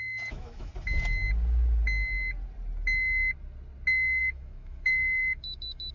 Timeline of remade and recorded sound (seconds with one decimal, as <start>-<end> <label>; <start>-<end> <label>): 0.0-0.7 remade; 0.7-4.2 recorded; 4.2-5.9 remade